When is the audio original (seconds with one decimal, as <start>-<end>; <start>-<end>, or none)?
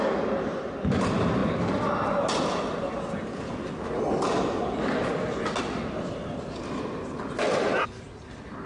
0.0-8.7